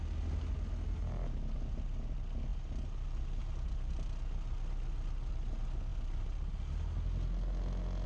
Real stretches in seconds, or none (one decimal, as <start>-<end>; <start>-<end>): 0.0-8.1